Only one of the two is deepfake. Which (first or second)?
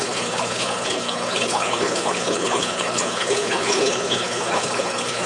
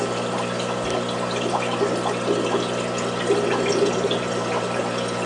first